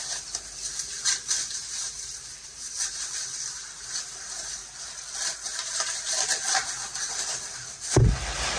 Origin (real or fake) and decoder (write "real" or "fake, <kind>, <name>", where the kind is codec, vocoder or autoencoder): real